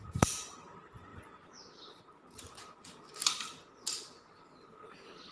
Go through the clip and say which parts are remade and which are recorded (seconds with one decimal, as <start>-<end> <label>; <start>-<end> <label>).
0.0-5.3 recorded